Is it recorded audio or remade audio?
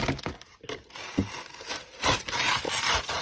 recorded